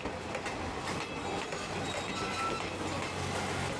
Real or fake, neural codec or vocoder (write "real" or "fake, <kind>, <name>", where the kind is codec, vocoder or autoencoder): real